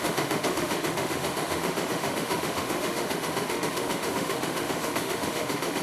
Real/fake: fake